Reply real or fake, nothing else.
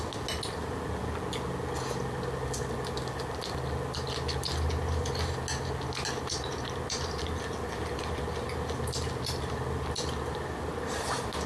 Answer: real